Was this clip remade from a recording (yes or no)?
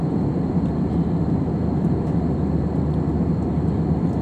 no